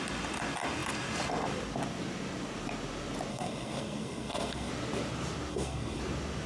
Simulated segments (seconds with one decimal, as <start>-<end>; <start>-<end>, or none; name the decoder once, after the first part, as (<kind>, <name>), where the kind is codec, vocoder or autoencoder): 3.3-4.7 (codec, SNAC); 5.5-6.0